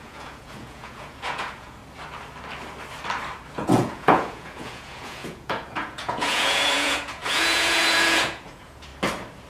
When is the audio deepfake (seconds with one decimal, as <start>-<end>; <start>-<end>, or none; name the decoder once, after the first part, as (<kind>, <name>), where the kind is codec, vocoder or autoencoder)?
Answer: 0.0-1.8 (vocoder, Vocos); 3.5-8.9